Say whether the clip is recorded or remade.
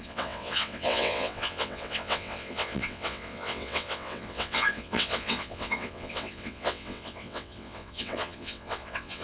remade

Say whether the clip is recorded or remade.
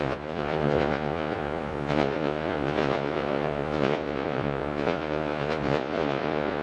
remade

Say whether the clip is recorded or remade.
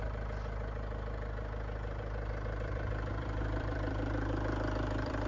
remade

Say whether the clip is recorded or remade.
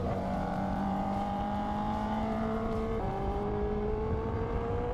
remade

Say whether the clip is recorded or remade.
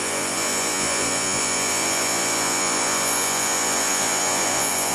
remade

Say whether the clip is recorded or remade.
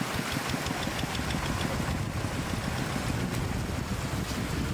recorded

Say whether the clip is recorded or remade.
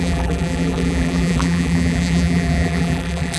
remade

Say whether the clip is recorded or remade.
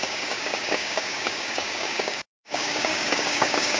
remade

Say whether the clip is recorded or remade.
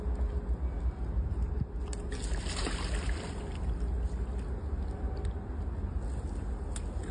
recorded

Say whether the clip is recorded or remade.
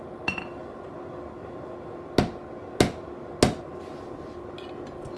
recorded